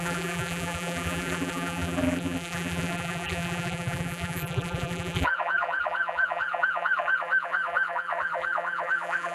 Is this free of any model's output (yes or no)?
no